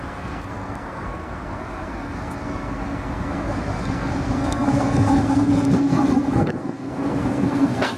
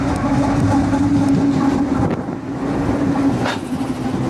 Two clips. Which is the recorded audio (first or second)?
second